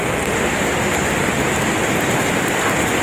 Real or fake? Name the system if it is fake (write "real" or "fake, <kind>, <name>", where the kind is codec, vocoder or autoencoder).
real